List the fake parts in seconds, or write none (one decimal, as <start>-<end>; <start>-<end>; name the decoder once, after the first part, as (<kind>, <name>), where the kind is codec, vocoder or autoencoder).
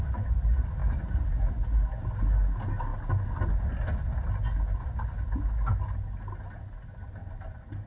0.8-1.6 (vocoder, BigVGAN v2); 7.2-7.9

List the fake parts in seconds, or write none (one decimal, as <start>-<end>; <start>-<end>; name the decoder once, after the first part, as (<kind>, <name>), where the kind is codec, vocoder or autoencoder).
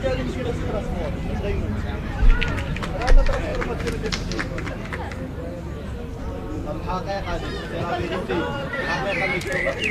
0.0-9.9 (vocoder, BigVGAN v2)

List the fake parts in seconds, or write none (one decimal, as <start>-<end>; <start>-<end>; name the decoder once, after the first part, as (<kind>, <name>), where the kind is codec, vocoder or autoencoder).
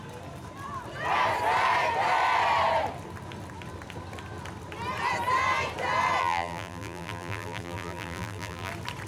6.2-8.7 (vocoder, BigVGAN v2)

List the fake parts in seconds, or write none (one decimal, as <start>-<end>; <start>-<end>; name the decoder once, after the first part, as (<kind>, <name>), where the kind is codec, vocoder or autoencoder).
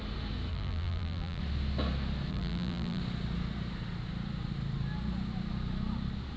0.5-1.4 (vocoder, BigVGAN v2); 2.3-3.0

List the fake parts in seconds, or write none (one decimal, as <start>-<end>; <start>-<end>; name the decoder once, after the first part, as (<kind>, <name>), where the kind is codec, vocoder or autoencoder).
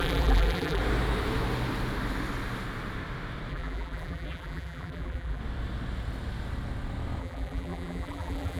0.0-0.8 (vocoder, BigVGAN v2); 3.5-5.4; 7.2-8.6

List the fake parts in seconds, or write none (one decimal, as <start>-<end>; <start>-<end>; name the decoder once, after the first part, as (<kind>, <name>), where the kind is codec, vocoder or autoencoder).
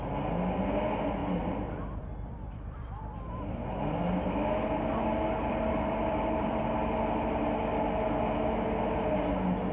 1.2-3.3 (vocoder, BigVGAN v2); 5.1-6.6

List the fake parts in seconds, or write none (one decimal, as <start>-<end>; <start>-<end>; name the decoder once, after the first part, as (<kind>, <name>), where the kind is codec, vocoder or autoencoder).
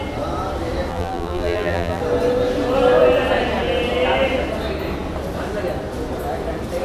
0.9-2.0 (vocoder, BigVGAN v2)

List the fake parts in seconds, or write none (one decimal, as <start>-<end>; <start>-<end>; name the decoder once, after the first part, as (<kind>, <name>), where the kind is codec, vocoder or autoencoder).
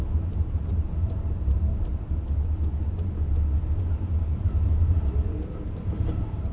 0.0-1.9 (vocoder, BigVGAN v2); 4.3-6.5